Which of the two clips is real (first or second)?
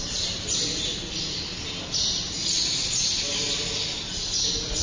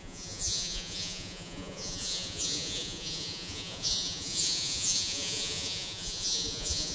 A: first